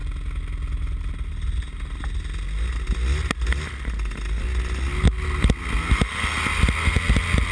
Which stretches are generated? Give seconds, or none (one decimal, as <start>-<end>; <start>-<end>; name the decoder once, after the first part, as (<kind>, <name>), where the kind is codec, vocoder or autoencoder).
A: none